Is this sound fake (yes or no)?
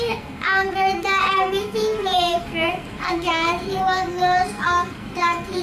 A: yes